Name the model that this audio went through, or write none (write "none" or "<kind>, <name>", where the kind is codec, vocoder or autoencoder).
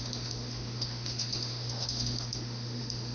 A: autoencoder, DAC-VAE